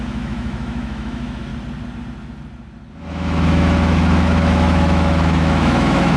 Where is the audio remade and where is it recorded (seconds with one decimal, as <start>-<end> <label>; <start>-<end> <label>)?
0.0-1.5 remade; 1.5-3.1 recorded; 3.1-6.2 remade